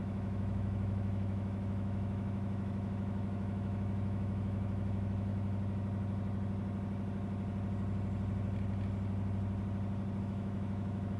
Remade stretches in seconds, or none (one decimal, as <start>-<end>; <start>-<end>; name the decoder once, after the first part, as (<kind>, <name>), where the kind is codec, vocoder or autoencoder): 0.0-5.3 (autoencoder, DAC-VAE); 10.2-11.2